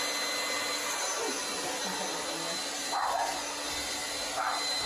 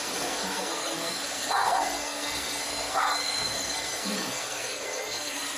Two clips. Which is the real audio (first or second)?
first